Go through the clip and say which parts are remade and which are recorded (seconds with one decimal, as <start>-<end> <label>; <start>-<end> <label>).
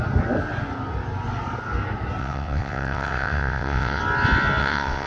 0.0-2.2 recorded; 2.2-4.0 remade; 4.0-4.6 recorded; 4.6-5.1 remade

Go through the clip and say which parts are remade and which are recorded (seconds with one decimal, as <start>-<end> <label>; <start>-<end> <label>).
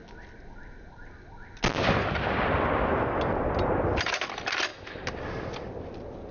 0.0-6.3 recorded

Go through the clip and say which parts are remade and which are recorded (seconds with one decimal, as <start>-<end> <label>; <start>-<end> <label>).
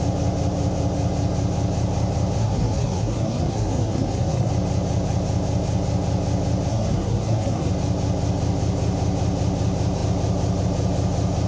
0.0-2.4 recorded; 2.4-4.5 remade; 4.5-6.7 recorded; 6.7-7.7 remade; 7.7-11.5 recorded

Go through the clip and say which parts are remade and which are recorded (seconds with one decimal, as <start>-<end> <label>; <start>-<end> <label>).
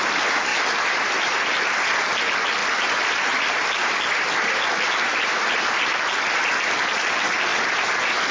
0.0-2.6 recorded; 2.6-6.5 remade; 6.5-7.5 recorded; 7.5-8.3 remade